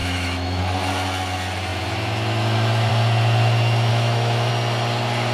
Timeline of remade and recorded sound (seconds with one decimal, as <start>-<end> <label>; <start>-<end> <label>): 0.0-0.6 remade; 0.6-3.9 recorded; 3.9-4.5 remade; 4.5-5.3 recorded